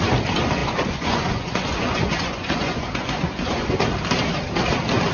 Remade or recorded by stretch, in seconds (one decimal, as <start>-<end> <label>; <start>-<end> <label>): 0.0-0.6 recorded; 0.6-3.7 remade; 3.7-5.1 recorded